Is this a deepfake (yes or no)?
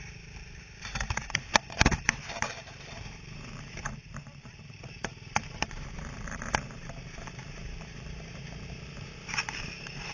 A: yes